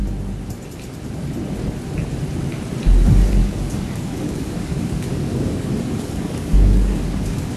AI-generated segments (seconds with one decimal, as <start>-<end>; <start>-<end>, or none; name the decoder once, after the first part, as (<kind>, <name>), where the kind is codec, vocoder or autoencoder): 3.4-7.6 (codec, DAC)